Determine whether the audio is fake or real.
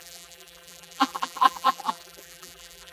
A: fake